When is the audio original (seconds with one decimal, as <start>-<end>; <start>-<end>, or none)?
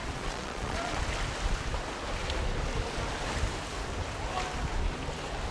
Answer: 1.0-5.5